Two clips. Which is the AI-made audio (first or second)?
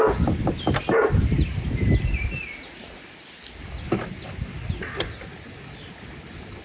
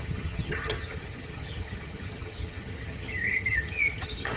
second